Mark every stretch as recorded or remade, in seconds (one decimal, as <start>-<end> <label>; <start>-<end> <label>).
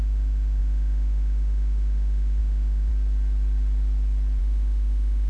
0.0-2.9 remade; 2.9-4.4 recorded; 4.4-5.3 remade